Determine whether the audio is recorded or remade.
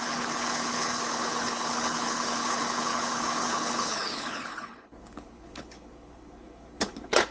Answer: remade